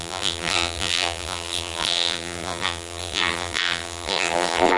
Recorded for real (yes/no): no